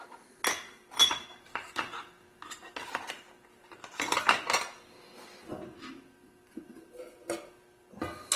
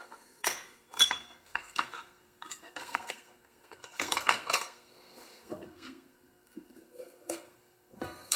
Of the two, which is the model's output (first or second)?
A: second